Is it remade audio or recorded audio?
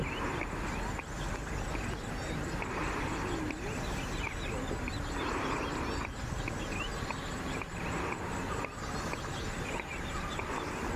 recorded